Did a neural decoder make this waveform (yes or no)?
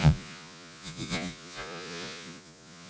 yes